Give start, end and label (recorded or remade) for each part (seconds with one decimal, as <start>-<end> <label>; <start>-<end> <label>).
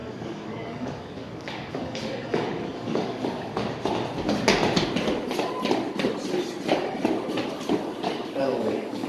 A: 0.0-3.5 remade; 3.5-8.4 recorded; 8.4-9.1 remade